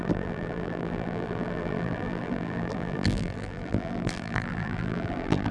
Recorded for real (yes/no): no